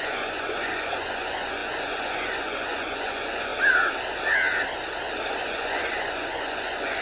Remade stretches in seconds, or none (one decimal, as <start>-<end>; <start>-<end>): 0.0-3.5; 5.4-7.0